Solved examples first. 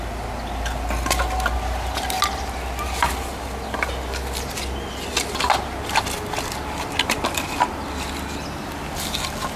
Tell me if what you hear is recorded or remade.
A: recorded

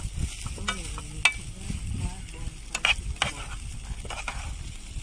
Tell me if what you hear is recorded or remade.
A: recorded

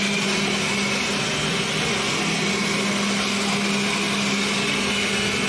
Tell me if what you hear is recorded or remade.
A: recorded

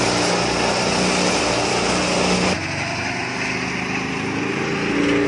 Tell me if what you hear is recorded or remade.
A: recorded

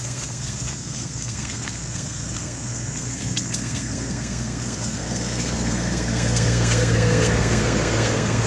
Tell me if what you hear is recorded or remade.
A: remade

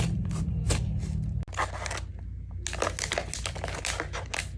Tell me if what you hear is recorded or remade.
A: recorded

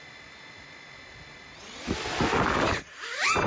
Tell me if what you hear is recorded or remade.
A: recorded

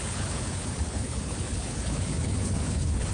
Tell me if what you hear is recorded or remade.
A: remade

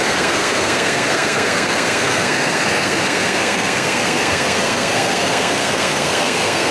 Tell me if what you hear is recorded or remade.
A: remade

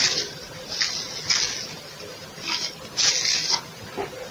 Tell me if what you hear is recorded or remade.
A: recorded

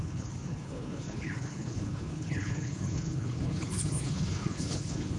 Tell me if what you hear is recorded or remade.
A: remade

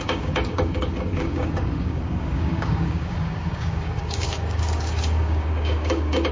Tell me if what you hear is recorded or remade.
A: remade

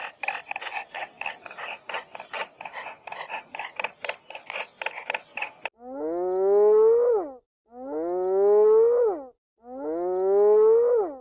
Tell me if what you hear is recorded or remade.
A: recorded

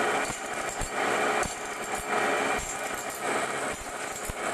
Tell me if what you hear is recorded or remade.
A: recorded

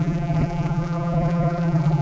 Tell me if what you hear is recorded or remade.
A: remade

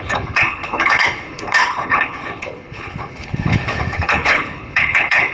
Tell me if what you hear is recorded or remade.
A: remade